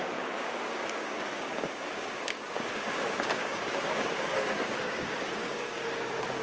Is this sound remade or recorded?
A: remade